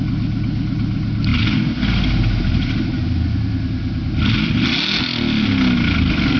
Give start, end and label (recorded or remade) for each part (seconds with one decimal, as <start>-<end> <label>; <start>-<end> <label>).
0.0-6.4 recorded